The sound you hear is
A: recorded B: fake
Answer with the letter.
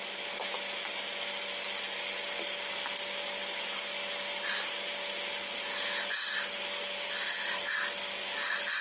A